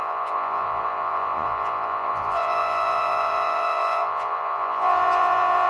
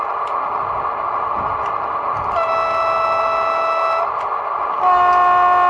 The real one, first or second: second